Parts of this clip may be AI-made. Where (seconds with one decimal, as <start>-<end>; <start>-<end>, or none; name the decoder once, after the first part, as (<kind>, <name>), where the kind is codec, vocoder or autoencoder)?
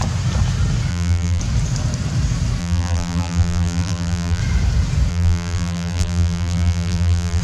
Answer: 0.9-1.4 (vocoder, BigVGAN v2); 2.6-4.4; 5.1-7.4